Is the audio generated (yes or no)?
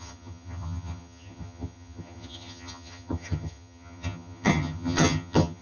yes